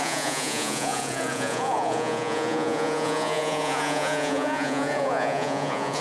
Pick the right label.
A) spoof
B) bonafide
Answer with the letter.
A